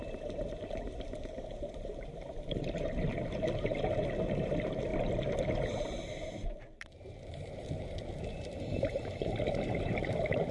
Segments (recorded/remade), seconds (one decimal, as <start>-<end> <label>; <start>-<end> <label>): 0.0-4.9 remade; 4.9-5.4 recorded; 5.4-6.4 remade; 6.4-8.3 recorded; 8.3-10.5 remade